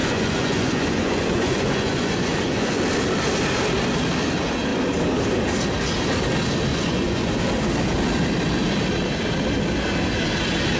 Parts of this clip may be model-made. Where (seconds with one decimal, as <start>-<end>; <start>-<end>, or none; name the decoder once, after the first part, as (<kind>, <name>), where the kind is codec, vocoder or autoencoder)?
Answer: 0.0-2.8 (vocoder, Vocos); 6.7-7.4